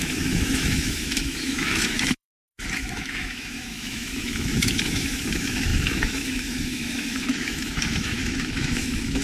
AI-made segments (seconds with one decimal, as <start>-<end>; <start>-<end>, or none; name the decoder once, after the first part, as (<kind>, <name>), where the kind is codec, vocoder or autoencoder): 0.0-9.2 (autoencoder, DAC-VAE)